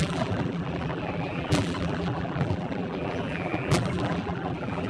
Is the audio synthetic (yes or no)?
yes